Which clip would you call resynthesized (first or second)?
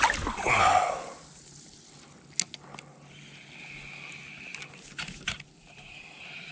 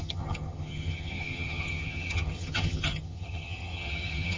second